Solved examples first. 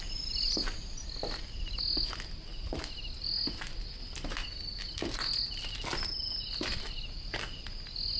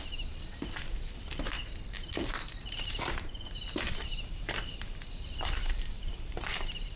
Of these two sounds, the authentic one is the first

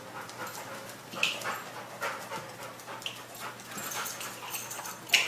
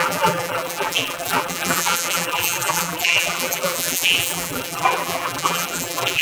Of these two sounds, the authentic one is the first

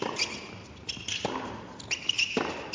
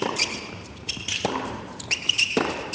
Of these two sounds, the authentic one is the first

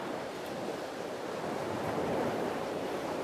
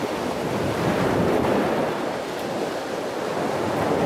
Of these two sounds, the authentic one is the second